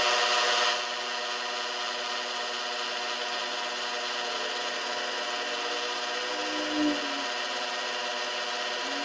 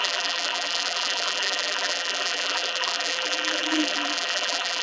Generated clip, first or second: second